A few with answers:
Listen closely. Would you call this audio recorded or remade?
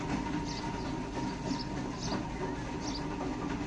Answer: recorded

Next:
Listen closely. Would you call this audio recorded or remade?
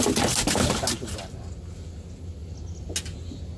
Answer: recorded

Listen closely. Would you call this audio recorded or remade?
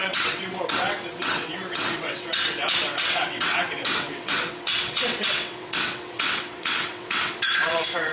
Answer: remade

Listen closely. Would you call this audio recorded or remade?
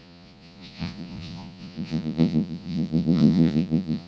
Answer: remade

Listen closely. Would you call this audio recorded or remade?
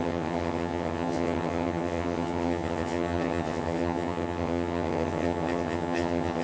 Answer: remade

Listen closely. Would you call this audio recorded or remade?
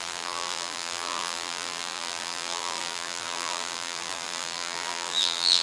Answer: remade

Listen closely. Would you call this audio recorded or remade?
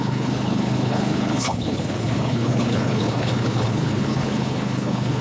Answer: remade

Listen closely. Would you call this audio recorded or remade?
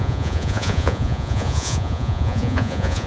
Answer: remade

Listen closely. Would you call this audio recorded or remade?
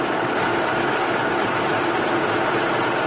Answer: recorded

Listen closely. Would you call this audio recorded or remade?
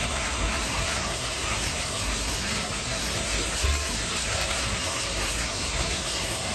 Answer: remade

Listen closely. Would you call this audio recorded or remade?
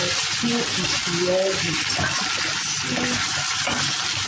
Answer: recorded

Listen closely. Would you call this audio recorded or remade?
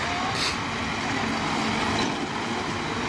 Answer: recorded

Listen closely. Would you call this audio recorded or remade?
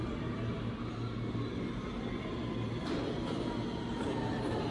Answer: recorded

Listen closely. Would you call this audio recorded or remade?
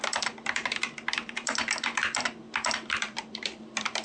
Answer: remade